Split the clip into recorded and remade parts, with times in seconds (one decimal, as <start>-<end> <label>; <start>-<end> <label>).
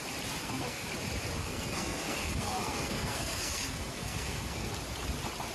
0.0-0.4 recorded; 0.4-0.9 remade; 0.9-1.4 recorded; 1.4-4.7 remade; 4.7-5.5 recorded